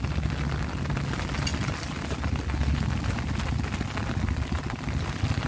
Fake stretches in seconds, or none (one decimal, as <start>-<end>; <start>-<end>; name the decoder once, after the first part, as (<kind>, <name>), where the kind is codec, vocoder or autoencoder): none

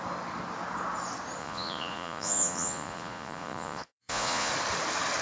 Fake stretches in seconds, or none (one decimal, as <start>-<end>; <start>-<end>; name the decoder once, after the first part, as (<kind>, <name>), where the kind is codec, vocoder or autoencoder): 1.4-4.5 (vocoder, Vocos)

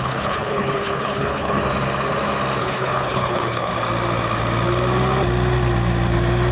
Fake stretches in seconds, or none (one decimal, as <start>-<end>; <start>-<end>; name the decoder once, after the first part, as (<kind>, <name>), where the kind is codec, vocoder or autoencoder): 0.0-1.6 (codec, HILCodec); 2.6-3.7

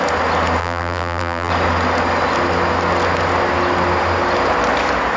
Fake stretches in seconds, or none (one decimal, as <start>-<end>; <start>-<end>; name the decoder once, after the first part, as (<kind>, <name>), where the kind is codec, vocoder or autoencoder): 0.6-1.5 (vocoder, BigVGAN v2)

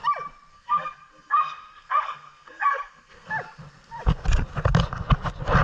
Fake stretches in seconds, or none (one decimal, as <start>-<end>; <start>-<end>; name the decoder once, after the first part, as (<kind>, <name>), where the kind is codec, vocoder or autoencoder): 0.5-3.3 (codec, SNAC)

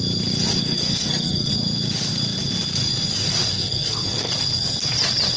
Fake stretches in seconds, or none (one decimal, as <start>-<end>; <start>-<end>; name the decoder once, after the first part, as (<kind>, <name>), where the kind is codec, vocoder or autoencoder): 0.6-1.5 (codec, SNAC); 3.5-4.3

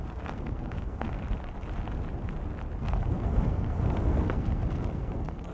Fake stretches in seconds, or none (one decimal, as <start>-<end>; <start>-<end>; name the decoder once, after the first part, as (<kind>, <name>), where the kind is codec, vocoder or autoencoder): 0.0-1.2 (codec, SNAC); 2.8-5.5